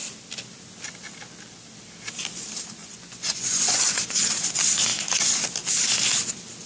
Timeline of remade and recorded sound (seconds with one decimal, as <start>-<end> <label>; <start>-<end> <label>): 0.0-2.8 recorded; 2.8-4.0 remade; 4.0-6.7 recorded